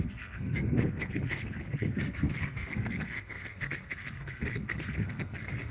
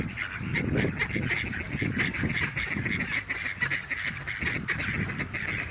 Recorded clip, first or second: second